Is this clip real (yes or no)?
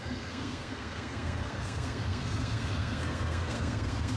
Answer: no